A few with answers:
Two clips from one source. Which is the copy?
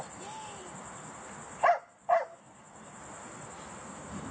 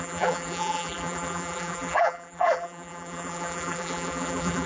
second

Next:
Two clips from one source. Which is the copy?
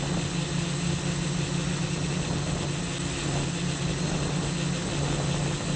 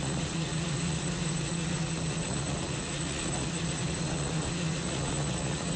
second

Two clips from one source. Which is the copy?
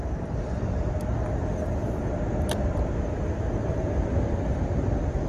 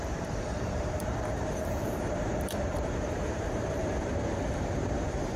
second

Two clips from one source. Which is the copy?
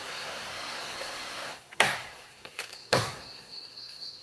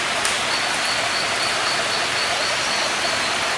first